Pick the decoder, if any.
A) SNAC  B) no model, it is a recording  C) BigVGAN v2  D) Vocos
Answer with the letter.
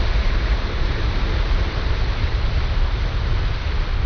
B